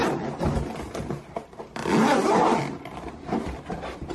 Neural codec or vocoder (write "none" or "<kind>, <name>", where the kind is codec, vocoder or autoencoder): none